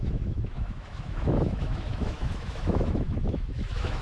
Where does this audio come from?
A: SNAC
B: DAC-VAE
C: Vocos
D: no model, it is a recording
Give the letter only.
B